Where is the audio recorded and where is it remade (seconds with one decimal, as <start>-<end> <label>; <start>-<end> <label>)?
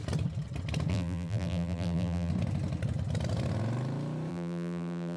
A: 0.0-0.9 recorded; 0.9-2.3 remade; 2.3-4.3 recorded; 4.3-5.2 remade